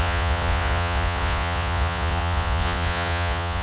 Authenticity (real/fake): fake